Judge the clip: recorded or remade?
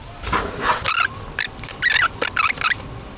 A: recorded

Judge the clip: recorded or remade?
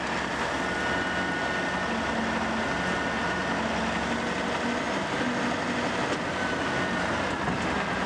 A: recorded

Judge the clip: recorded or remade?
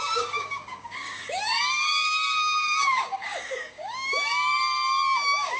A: remade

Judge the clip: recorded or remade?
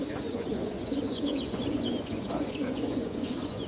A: remade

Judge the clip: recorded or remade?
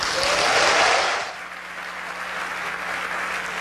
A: recorded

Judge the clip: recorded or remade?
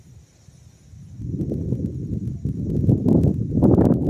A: recorded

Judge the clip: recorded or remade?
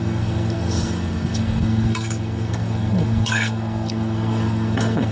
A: remade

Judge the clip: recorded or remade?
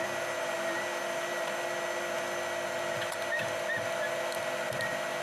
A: recorded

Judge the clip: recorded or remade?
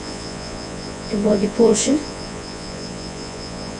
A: remade